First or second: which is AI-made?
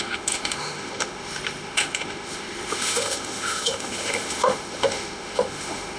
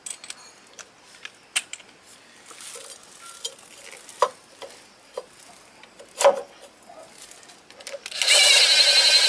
first